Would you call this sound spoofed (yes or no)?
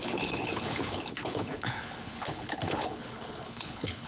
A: yes